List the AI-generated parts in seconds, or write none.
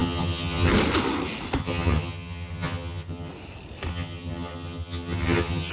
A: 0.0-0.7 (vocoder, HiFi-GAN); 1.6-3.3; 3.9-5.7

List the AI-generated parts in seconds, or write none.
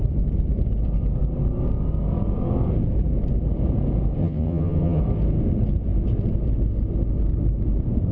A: 4.2-5.0 (vocoder, HiFi-GAN)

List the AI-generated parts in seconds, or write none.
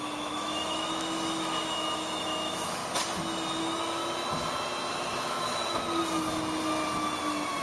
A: 0.0-2.8 (autoencoder, DAC-VAE); 3.6-4.0; 4.9-6.0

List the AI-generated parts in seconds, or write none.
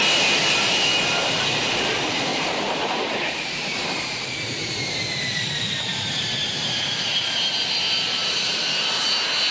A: 2.3-7.4 (vocoder, BigVGAN v2); 8.2-8.8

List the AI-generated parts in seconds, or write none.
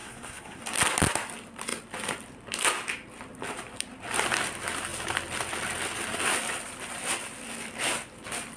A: 0.0-0.6 (codec, SNAC)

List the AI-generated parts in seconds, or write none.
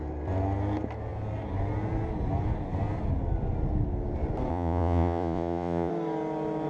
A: 4.5-5.9 (vocoder, Vocos)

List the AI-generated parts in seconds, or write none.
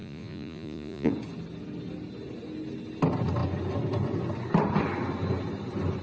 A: 0.0-1.1 (vocoder, Vocos)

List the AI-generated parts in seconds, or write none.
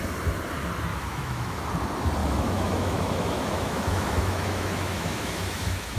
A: 0.9-1.6 (autoencoder, DAC-VAE); 2.2-6.0